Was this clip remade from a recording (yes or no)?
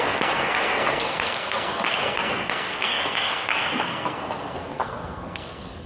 yes